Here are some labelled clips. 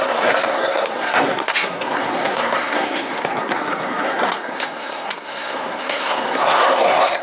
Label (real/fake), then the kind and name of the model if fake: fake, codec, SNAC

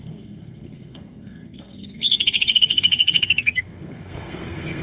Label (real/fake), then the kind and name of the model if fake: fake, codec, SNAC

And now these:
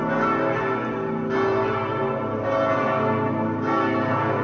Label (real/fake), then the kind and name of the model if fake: real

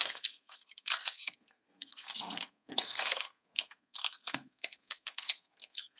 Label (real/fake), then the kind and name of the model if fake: fake, codec, SNAC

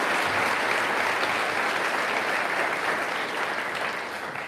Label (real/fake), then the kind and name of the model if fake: real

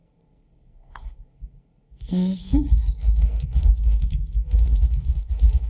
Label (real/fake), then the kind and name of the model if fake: fake, codec, SNAC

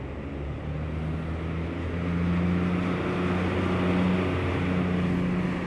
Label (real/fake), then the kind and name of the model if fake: real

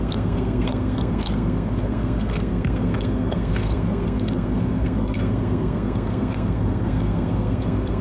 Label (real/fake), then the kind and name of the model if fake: fake, codec, SNAC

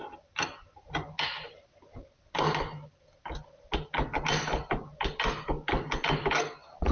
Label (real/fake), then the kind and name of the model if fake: real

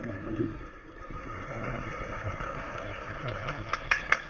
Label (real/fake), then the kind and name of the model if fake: fake, codec, SNAC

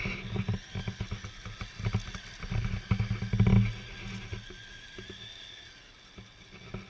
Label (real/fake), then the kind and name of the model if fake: real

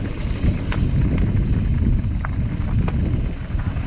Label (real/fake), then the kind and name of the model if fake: real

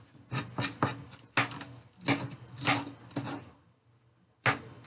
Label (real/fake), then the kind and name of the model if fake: real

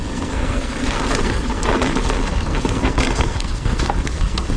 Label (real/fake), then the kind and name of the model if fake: fake, codec, SNAC